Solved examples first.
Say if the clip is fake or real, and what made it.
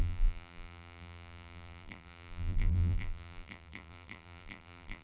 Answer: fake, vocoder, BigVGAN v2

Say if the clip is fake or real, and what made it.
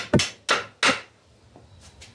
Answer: real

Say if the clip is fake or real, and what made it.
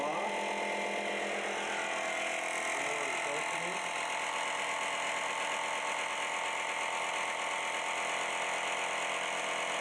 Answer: real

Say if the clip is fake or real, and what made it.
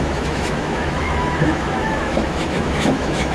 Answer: fake, autoencoder, DAC-VAE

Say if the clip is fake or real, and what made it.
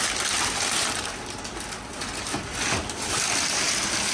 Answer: real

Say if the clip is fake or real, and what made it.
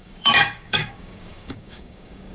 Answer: fake, codec, DAC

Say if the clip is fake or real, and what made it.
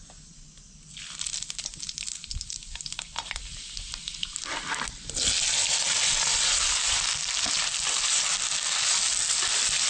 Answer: real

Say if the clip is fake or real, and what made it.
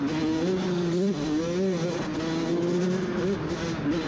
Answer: real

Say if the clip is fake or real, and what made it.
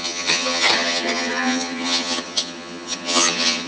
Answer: fake, vocoder, HiFi-GAN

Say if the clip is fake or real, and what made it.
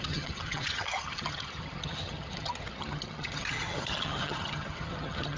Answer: fake, vocoder, HiFi-GAN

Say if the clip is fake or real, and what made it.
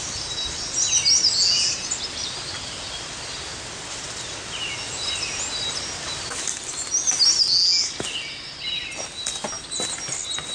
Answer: real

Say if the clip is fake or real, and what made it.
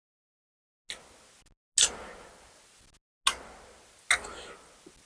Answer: real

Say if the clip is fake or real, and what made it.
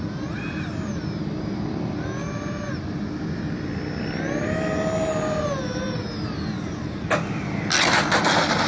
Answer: real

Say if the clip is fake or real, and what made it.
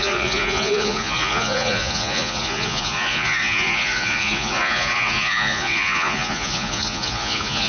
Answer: fake, vocoder, Vocos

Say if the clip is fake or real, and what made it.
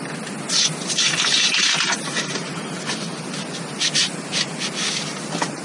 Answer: real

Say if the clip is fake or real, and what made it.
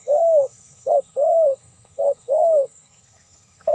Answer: fake, codec, SNAC